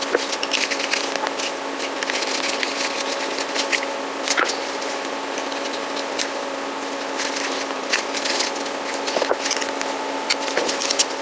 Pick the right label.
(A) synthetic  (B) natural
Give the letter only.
B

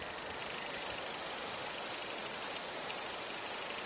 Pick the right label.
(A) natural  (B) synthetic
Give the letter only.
A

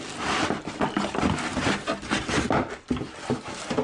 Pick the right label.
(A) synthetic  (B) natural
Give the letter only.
B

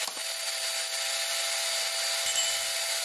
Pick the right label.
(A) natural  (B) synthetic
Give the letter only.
A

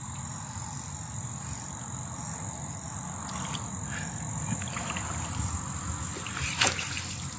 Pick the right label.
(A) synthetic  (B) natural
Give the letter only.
B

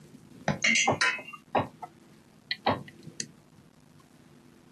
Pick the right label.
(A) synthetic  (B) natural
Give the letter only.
B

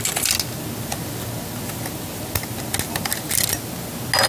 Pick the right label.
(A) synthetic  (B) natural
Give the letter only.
B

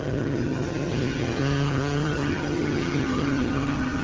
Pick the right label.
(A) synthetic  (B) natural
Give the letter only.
A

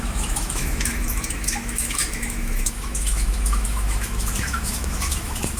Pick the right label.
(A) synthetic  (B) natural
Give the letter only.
A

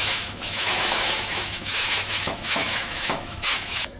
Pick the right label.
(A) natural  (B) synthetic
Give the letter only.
B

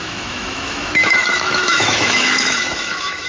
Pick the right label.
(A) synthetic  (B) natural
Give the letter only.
A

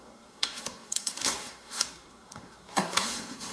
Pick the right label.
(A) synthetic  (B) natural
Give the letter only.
A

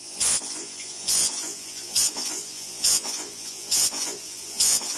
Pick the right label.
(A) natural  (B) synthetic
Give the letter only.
B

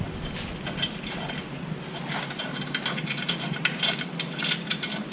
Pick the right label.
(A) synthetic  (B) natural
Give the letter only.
B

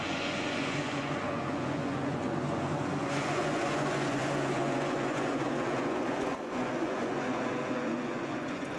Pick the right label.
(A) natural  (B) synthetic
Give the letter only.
B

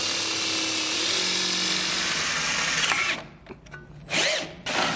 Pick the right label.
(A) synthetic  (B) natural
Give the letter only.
B